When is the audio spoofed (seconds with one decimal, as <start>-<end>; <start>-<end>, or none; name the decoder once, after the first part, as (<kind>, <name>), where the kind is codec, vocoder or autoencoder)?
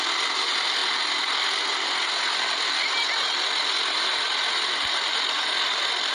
none